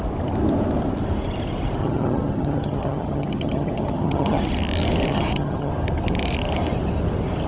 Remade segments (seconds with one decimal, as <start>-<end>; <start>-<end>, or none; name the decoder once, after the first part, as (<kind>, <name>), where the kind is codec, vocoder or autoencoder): 1.8-4.4 (vocoder, HiFi-GAN); 5.1-5.7